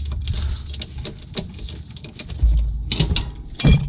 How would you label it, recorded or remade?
recorded